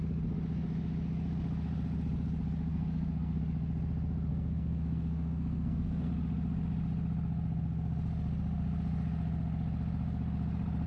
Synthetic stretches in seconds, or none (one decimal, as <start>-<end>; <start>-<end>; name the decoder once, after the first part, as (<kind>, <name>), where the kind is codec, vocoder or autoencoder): 2.7-3.4 (codec, SNAC); 4.3-6.1